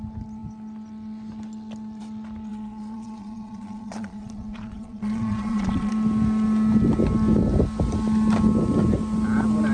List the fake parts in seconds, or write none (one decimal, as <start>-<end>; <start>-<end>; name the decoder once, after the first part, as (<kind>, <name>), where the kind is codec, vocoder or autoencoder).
2.5-5.9 (vocoder, Vocos)